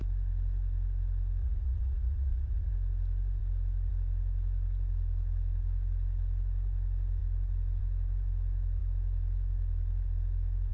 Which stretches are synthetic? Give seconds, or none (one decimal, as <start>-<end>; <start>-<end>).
1.4-2.7